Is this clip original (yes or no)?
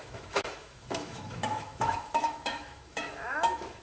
no